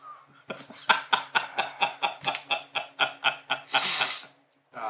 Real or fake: real